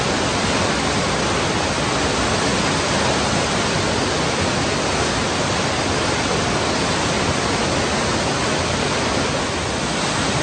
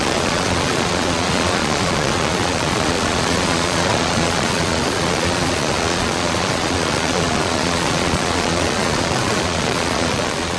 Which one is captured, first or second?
first